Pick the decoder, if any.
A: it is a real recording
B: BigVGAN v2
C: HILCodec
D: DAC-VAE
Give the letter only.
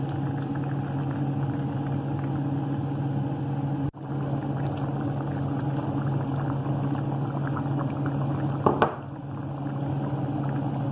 A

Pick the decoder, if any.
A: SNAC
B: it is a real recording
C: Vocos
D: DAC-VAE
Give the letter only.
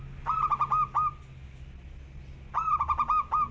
B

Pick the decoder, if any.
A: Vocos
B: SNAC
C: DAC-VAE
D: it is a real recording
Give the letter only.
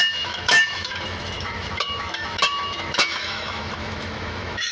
C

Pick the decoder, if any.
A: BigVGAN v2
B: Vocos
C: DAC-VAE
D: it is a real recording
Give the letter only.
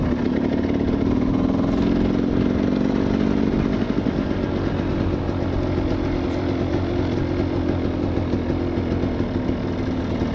D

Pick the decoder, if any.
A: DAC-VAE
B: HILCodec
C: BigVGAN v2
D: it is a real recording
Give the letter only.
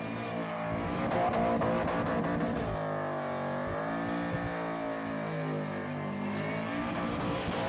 D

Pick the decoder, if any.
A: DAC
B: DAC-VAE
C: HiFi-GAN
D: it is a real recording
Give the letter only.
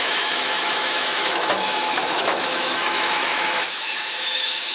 B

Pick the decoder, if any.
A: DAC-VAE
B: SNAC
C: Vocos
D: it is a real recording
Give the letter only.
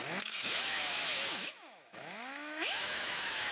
A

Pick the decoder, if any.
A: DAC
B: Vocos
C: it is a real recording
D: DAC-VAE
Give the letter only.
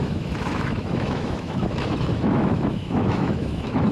D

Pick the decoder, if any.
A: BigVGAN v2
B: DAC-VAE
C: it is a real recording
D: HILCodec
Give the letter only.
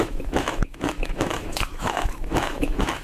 B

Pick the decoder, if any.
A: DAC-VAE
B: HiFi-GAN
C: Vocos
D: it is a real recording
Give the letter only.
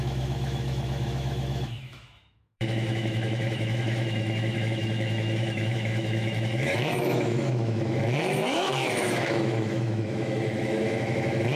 A